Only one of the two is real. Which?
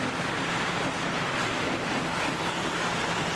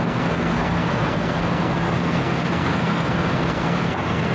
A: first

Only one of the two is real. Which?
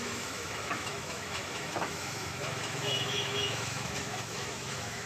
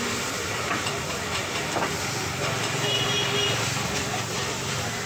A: second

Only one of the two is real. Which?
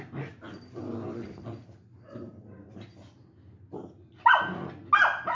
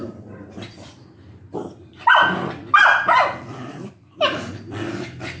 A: first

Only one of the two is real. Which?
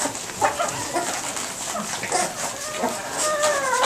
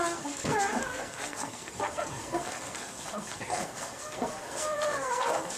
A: first